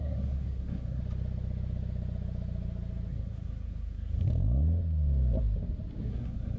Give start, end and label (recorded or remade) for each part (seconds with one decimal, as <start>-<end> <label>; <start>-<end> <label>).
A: 0.0-1.0 remade; 1.0-3.1 recorded; 3.1-4.3 remade; 4.3-6.0 recorded; 6.0-6.6 remade